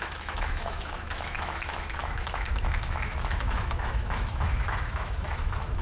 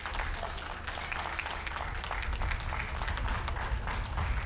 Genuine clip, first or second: second